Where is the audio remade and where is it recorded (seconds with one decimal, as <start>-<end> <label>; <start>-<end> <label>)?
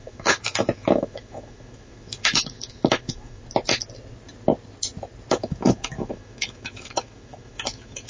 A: 0.0-3.4 remade; 3.4-5.3 recorded; 5.3-8.1 remade